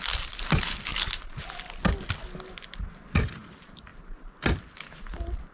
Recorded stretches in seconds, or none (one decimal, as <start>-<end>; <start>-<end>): 0.9-3.5